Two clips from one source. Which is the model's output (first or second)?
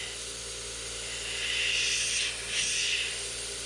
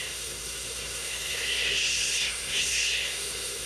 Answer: second